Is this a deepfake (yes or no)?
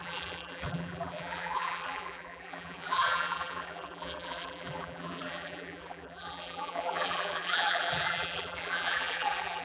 yes